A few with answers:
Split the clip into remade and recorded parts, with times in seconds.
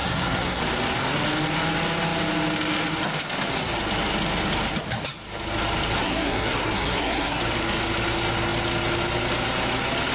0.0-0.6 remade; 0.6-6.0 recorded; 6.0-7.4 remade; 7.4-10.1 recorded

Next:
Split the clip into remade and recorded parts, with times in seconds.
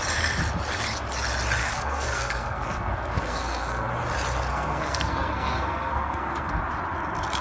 0.0-1.6 recorded; 1.6-3.9 remade; 3.9-4.5 recorded; 4.5-6.6 remade; 6.6-7.4 recorded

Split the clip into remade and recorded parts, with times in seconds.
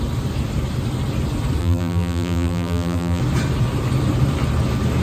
0.0-1.6 recorded; 1.6-3.2 remade; 3.2-5.0 recorded